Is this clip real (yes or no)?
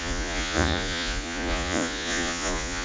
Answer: no